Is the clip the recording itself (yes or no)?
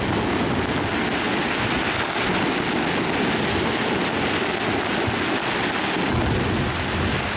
yes